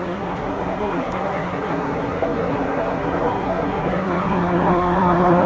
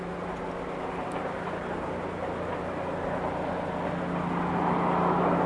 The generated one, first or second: first